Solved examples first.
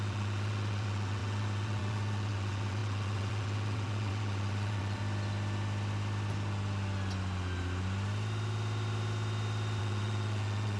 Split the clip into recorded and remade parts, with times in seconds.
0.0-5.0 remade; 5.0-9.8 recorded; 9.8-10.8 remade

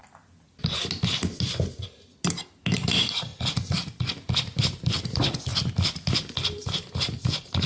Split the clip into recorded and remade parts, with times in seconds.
0.0-7.7 recorded

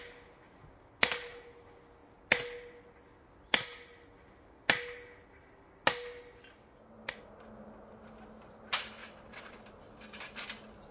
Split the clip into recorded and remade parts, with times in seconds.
0.0-9.0 recorded; 9.0-9.6 remade; 9.6-10.9 recorded

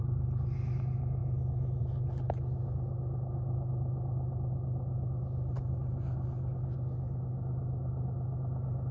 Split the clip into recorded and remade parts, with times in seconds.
0.0-8.9 recorded

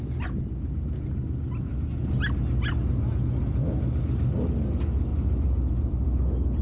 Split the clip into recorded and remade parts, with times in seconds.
0.0-6.6 recorded

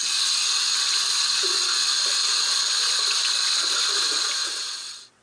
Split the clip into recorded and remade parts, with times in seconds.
0.0-4.4 recorded; 4.4-5.2 remade